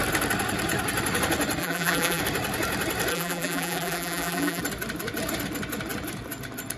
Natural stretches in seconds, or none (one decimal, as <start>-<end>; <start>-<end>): 0.0-1.6; 2.2-3.1; 4.6-6.8